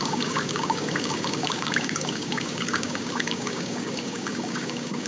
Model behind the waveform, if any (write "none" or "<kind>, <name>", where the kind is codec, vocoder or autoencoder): codec, DAC